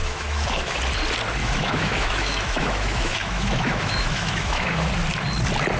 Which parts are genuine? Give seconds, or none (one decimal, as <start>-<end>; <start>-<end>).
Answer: 0.8-1.4; 4.9-5.8